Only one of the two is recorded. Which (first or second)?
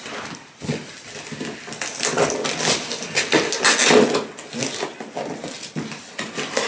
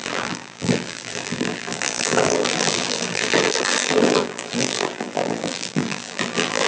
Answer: first